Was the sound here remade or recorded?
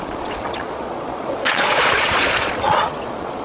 remade